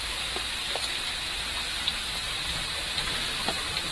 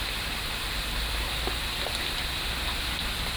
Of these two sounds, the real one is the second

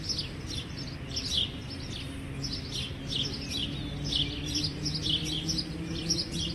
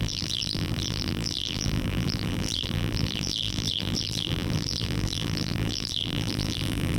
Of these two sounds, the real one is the first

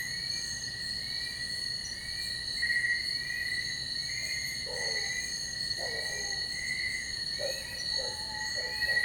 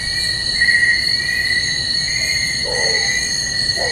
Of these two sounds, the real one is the first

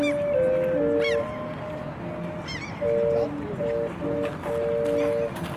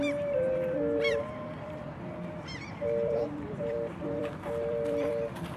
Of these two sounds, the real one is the first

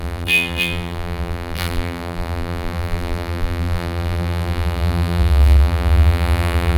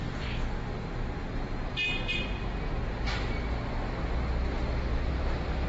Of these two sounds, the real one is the second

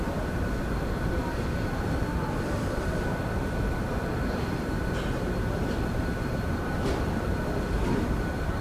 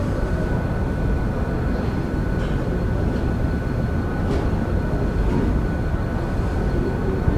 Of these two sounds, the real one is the second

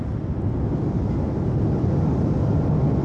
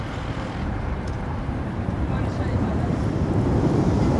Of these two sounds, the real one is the first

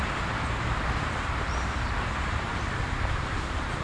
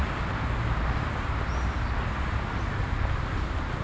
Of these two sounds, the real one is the second